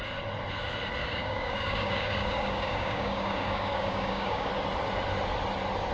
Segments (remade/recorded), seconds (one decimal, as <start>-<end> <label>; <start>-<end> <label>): 0.0-1.0 recorded; 1.0-4.5 remade; 4.5-5.9 recorded